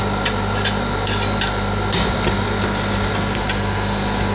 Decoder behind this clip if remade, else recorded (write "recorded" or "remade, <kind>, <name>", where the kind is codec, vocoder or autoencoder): recorded